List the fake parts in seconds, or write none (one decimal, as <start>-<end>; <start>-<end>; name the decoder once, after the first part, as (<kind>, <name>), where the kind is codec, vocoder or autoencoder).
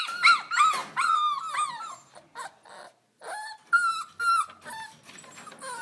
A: none